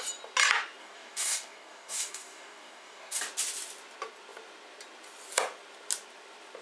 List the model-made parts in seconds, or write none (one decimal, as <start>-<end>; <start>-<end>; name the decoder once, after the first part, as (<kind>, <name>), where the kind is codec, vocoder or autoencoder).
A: 0.8-3.2 (codec, DAC)